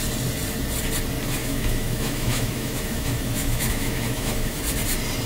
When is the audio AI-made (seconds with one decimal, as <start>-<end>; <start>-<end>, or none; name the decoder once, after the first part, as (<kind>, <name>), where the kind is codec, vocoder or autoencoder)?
1.4-4.6 (autoencoder, DAC-VAE)

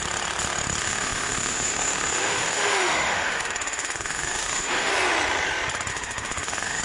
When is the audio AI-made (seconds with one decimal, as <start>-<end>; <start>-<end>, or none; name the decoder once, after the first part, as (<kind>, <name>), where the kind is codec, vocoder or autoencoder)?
0.8-4.9 (autoencoder, DAC-VAE); 5.9-6.8

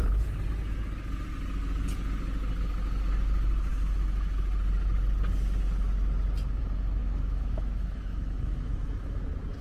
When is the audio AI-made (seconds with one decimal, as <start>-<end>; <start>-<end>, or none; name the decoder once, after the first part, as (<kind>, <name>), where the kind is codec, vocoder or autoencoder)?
7.0-9.2 (autoencoder, DAC-VAE)

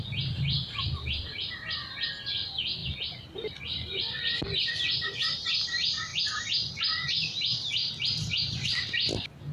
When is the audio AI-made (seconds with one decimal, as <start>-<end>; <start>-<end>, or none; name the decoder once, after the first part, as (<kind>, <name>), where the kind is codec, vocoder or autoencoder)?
none